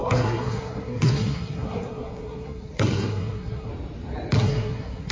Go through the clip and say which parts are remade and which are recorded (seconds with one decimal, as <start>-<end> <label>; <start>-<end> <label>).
0.0-3.7 remade; 3.7-4.4 recorded; 4.4-5.1 remade